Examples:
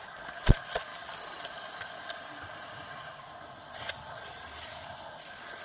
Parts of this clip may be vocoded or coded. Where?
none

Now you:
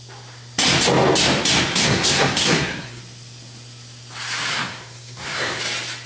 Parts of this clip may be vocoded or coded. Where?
1.7-3.0 (codec, SNAC); 4.5-5.6